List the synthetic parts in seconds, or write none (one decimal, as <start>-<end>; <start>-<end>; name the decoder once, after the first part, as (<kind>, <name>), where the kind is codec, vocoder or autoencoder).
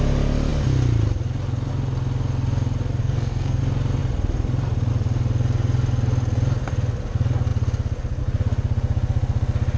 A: 3.0-3.6 (codec, SNAC)